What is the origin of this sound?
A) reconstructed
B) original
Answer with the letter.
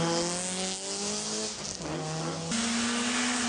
B